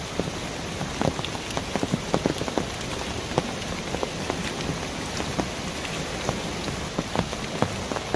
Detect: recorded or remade recorded